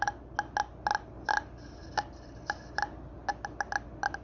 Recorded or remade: recorded